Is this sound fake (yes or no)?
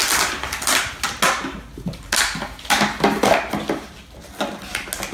no